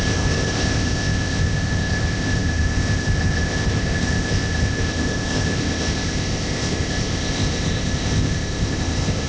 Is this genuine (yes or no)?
no